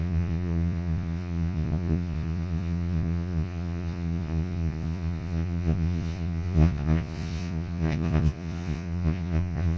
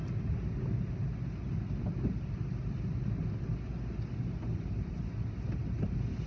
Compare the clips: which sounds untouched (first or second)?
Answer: second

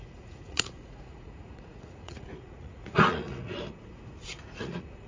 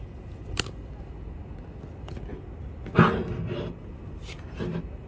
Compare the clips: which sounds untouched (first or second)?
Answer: second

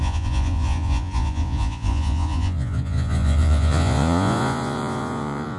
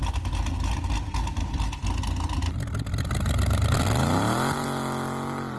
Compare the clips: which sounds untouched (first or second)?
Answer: second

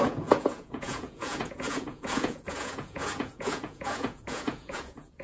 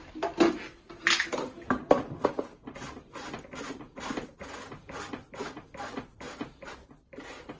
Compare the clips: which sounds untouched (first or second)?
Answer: second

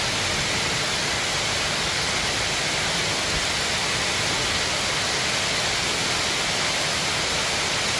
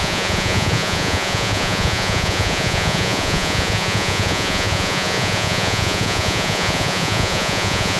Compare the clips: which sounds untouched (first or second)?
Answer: first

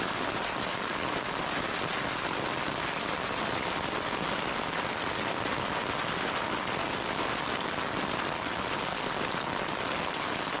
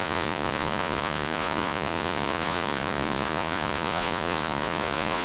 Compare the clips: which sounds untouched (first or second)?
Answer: first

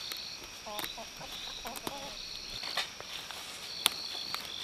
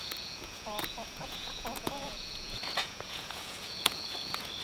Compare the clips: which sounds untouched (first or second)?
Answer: first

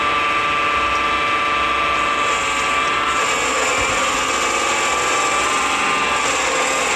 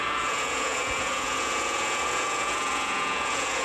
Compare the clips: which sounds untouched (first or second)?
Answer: first